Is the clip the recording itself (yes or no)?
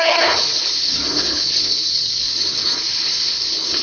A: no